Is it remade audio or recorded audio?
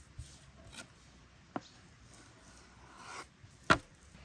recorded